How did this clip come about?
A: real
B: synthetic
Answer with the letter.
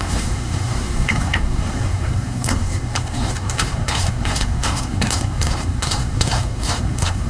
B